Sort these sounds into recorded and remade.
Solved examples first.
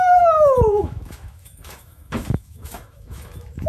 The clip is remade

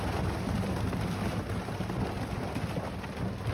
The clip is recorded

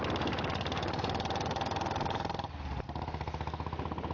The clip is recorded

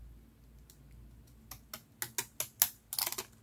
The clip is recorded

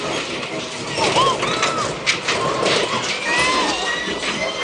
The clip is recorded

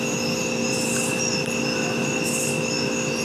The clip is recorded